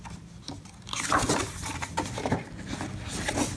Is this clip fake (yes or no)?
no